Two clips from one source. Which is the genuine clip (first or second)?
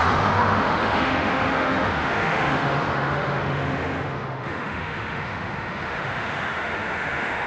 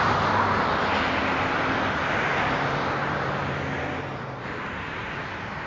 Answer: second